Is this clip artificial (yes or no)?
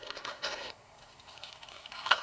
yes